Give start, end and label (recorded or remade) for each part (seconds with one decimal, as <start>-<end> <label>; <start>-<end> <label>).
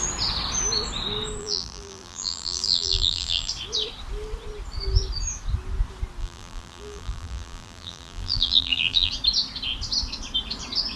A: 0.0-1.4 recorded; 1.4-3.5 remade; 3.5-6.2 recorded; 6.2-9.1 remade; 9.1-11.0 recorded